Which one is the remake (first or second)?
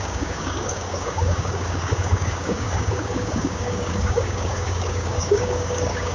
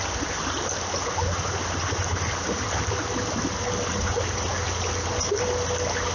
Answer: first